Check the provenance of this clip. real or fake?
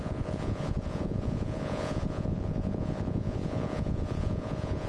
fake